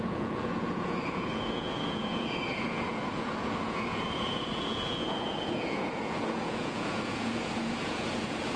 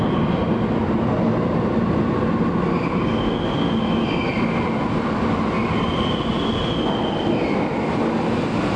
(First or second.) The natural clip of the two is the second